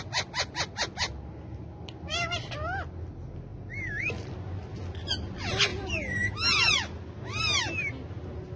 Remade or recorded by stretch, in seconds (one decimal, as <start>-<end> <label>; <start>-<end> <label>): 0.0-5.7 recorded; 5.7-6.3 remade; 6.3-8.6 recorded